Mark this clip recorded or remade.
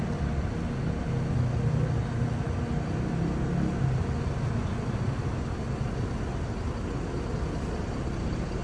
recorded